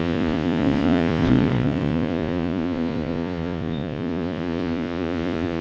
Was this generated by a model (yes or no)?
yes